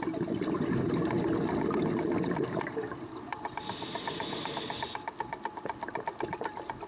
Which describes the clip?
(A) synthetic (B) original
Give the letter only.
B